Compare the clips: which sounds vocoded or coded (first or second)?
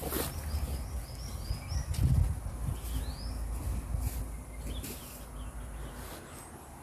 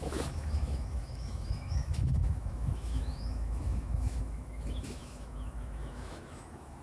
second